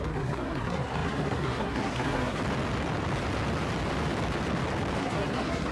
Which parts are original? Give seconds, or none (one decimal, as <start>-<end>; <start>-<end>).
2.4-5.0